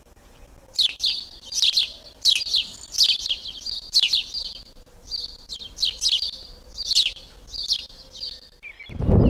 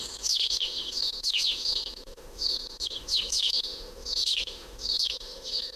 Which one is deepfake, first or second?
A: second